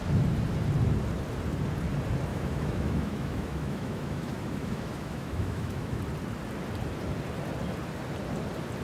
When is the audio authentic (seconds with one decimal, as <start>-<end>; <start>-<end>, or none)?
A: 0.0-2.3; 6.0-8.8